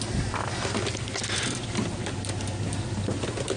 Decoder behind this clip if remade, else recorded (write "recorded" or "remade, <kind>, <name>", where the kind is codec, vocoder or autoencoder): recorded